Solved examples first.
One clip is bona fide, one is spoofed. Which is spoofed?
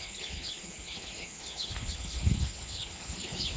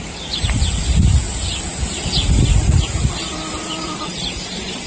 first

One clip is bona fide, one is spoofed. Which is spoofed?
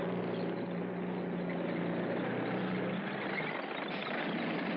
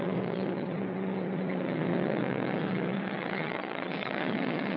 second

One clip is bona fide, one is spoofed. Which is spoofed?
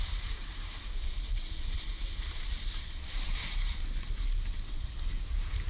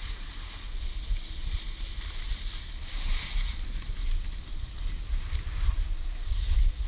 first